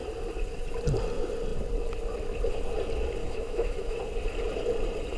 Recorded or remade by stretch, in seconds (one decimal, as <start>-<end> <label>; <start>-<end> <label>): 0.0-3.2 recorded; 3.2-4.0 remade; 4.0-5.2 recorded